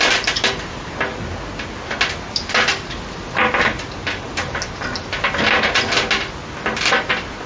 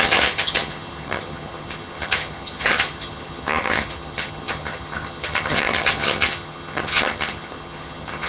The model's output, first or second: second